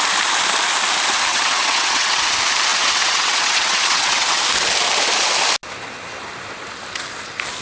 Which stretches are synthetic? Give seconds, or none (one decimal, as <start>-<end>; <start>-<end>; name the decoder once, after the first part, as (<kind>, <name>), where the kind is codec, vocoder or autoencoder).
1.3-2.2 (vocoder, WaveNeXt); 2.7-4.4